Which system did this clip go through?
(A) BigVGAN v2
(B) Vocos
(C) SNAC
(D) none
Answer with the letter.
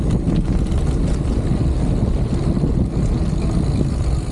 D